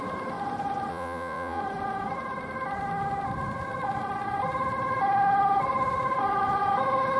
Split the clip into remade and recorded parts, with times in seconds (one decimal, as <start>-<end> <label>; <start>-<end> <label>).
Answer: 0.0-0.9 recorded; 0.9-1.6 remade; 1.6-7.2 recorded